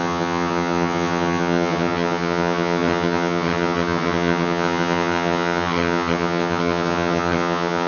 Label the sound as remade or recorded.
remade